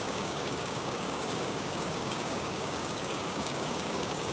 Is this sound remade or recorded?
remade